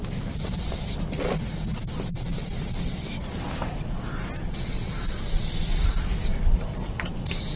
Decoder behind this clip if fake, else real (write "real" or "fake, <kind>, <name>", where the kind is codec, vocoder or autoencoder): real